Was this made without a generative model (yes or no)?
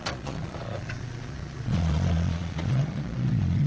no